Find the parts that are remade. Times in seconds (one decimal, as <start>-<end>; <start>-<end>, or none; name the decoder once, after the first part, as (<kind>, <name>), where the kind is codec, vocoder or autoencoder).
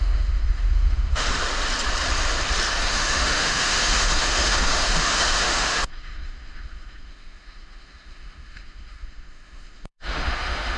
0.0-1.3 (autoencoder, DAC-VAE); 2.7-10.8